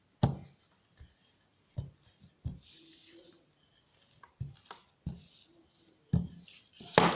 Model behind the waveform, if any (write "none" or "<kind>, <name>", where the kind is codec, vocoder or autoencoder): none